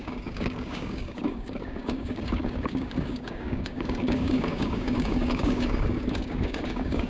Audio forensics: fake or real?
fake